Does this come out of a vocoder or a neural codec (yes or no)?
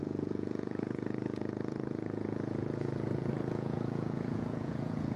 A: yes